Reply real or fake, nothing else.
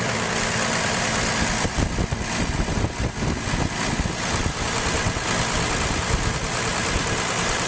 real